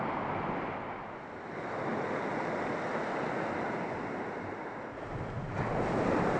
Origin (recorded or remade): recorded